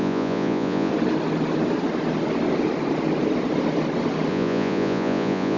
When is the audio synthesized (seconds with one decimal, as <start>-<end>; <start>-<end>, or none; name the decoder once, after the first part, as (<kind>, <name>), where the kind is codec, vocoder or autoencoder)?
0.0-0.9 (vocoder, Vocos); 4.3-5.6